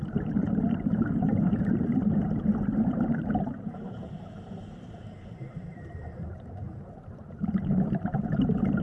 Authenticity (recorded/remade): remade